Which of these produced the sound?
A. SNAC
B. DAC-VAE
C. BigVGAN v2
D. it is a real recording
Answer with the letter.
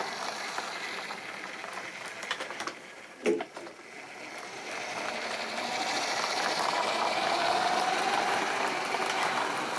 C